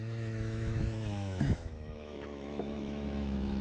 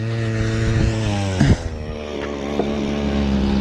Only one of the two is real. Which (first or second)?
second